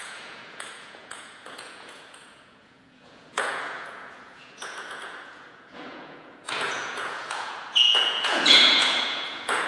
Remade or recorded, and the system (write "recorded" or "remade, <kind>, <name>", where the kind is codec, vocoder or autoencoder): remade, vocoder, Vocos